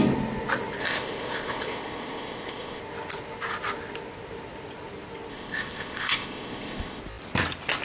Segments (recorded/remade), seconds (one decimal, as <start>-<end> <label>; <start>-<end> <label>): 0.0-0.8 recorded; 0.8-2.8 remade; 2.8-5.3 recorded; 5.3-7.0 remade; 7.0-7.8 recorded